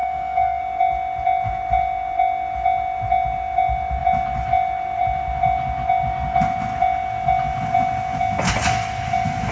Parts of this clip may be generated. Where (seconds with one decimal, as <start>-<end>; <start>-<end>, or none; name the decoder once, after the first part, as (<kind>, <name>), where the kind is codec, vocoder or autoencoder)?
0.0-0.6 (codec, SNAC)